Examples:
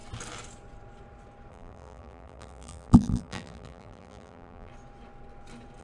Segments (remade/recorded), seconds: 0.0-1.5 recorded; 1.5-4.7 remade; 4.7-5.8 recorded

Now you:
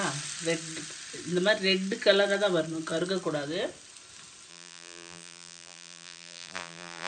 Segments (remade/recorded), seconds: 0.0-4.5 recorded; 4.5-7.1 remade

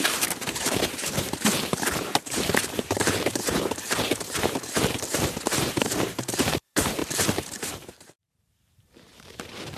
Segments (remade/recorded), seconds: 0.0-9.8 remade

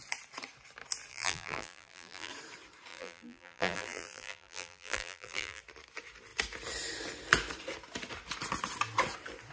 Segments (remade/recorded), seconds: 0.0-1.1 recorded; 1.1-2.3 remade; 2.3-2.9 recorded; 2.9-5.6 remade; 5.6-9.5 recorded